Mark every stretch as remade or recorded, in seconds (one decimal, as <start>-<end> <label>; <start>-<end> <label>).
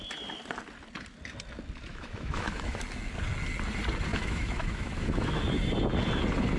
0.0-1.9 recorded; 1.9-2.8 remade; 2.8-4.1 recorded; 4.1-5.4 remade; 5.4-6.6 recorded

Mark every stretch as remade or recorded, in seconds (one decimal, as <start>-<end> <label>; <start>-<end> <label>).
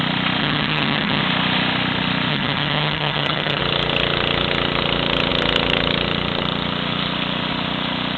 0.0-0.4 recorded; 0.4-1.2 remade; 1.2-2.3 recorded; 2.3-3.6 remade; 3.6-8.2 recorded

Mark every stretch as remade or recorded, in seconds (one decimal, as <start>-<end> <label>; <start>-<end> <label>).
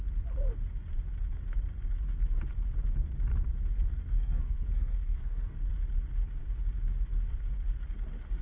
0.0-3.9 recorded; 3.9-5.7 remade; 5.7-8.4 recorded